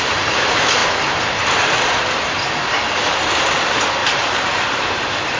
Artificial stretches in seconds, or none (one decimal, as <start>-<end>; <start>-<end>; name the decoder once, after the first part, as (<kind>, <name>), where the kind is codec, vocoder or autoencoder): 4.0-5.4 (vocoder, BigVGAN v2)